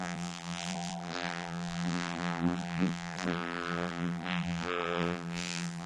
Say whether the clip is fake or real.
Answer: fake